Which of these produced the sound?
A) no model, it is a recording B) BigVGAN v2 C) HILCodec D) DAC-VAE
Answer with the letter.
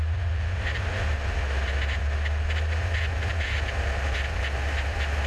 A